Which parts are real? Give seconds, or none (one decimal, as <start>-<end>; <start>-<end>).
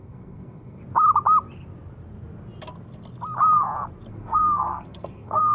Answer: 0.8-4.1